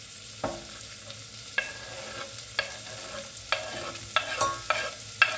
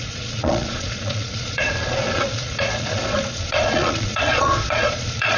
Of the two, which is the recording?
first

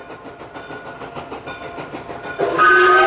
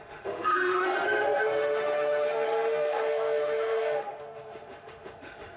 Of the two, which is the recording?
first